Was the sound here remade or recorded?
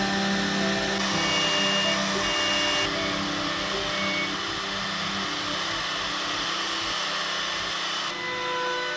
recorded